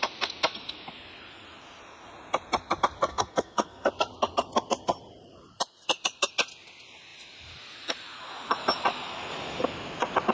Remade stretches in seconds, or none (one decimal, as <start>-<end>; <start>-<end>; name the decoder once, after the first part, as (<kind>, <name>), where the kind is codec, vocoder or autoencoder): 3.1-3.9 (codec, SNAC)

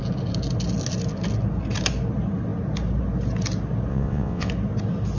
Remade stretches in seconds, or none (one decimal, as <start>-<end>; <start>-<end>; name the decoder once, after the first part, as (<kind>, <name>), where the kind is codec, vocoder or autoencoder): 3.9-4.5 (vocoder, WaveNeXt)